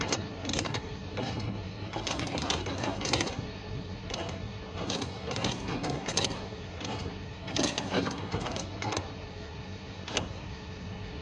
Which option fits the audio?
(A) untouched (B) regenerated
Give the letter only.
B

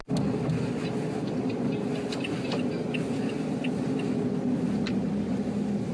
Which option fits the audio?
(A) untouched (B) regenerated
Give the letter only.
A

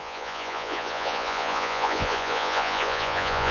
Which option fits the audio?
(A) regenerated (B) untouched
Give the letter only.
A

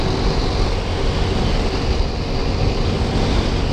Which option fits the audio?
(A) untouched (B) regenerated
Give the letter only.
A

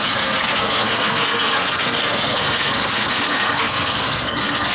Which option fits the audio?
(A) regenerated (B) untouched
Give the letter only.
A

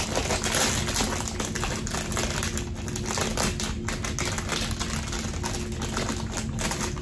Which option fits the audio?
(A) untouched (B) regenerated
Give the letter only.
A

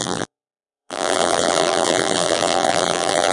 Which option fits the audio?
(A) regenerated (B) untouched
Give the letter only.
A